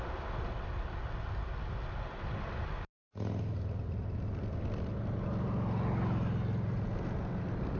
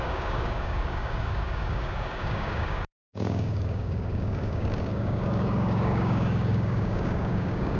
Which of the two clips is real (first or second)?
first